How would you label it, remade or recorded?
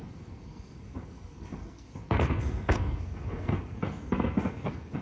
remade